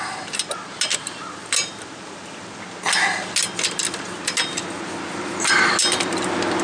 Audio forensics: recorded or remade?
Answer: recorded